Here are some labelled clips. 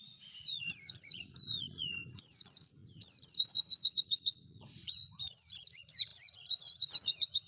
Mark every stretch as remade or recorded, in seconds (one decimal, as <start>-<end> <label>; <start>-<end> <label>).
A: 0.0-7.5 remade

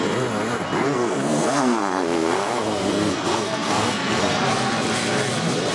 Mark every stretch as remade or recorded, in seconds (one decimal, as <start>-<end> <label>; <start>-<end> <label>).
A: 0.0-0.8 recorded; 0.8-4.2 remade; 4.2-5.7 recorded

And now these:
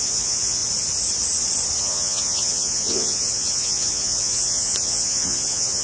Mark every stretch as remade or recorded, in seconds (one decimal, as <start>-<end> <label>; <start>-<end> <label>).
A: 0.0-0.6 remade; 0.6-1.8 recorded; 1.8-5.8 remade

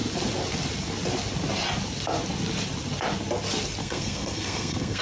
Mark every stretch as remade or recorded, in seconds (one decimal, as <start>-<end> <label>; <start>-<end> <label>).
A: 0.0-3.8 recorded; 3.8-5.0 remade

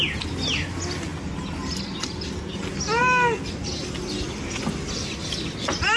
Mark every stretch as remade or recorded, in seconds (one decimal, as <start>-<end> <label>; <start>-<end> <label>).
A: 0.0-6.0 recorded